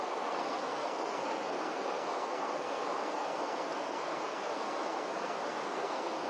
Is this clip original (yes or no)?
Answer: no